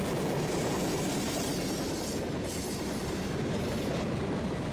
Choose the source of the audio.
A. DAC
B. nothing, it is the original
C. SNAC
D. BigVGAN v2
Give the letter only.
B